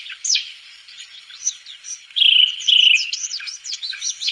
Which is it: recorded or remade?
remade